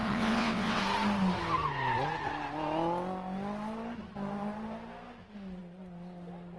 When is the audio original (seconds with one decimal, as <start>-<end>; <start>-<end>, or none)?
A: 0.8-6.6